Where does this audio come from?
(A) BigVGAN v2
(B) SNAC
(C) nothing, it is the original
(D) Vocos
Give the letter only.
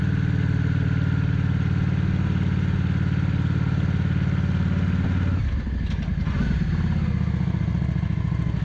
C